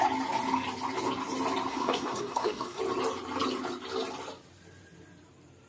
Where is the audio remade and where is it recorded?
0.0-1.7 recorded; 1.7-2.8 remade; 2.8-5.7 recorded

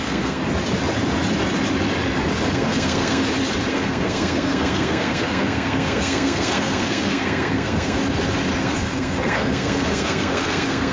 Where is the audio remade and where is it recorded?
0.0-0.4 remade; 0.4-2.5 recorded; 2.5-3.2 remade; 3.2-3.7 recorded; 3.7-8.0 remade; 8.0-8.6 recorded; 8.6-10.9 remade